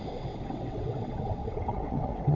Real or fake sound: fake